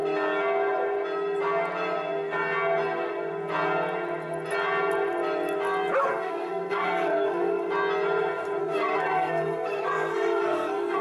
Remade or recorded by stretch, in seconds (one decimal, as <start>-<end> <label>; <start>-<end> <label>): 0.0-6.1 recorded; 6.1-7.7 remade; 7.7-8.6 recorded; 8.6-11.0 remade